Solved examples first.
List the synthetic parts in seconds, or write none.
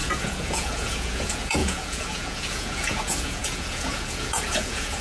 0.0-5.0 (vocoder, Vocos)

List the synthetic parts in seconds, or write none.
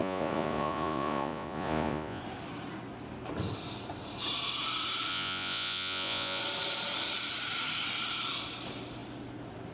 0.0-2.2 (vocoder, Vocos); 5.1-6.4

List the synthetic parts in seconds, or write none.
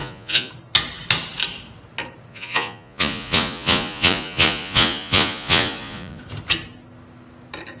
0.0-0.5 (vocoder, Vocos); 2.3-6.2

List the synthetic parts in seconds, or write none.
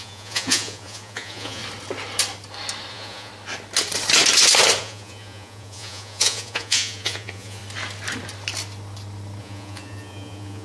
0.0-1.6 (vocoder, Vocos); 2.9-3.3; 4.8-7.6; 9.4-10.6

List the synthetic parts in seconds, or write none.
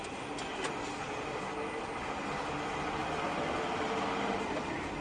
none